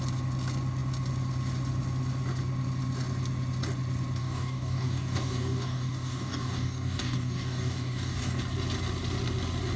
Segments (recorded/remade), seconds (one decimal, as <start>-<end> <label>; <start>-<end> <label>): 0.0-4.2 recorded; 4.2-8.4 remade; 8.4-9.8 recorded